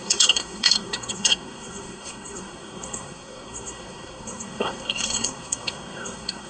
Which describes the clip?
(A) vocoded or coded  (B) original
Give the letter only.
A